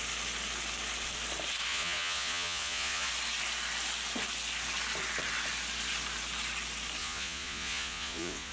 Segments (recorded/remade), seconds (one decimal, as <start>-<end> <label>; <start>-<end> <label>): 0.0-1.7 recorded; 1.7-3.1 remade; 3.1-7.0 recorded; 7.0-8.5 remade